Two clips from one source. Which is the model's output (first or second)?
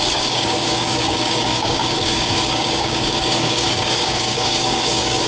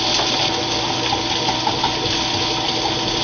first